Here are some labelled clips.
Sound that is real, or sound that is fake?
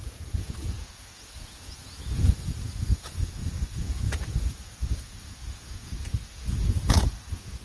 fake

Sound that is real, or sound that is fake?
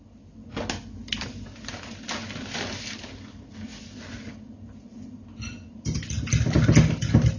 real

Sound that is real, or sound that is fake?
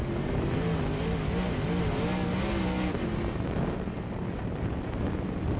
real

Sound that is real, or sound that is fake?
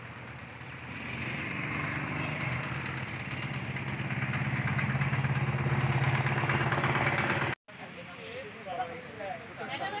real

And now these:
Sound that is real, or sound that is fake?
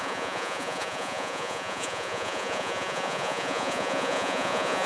fake